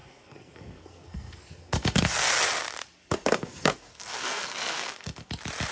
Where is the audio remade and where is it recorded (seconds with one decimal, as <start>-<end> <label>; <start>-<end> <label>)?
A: 0.0-2.3 remade; 2.3-3.0 recorded; 3.0-5.3 remade; 5.3-5.7 recorded